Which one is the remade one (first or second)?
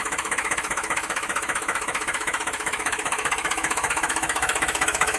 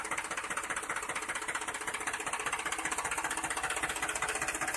first